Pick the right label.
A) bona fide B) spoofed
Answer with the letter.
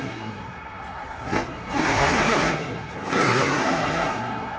B